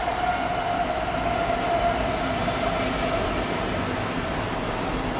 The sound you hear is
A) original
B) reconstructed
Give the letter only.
A